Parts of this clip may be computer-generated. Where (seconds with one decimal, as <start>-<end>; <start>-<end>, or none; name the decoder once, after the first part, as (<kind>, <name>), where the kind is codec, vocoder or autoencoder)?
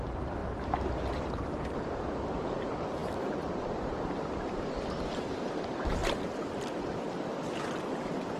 0.0-6.0 (vocoder, BigVGAN v2); 7.6-8.4